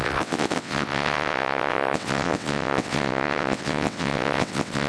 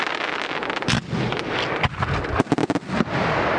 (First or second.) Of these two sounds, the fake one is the first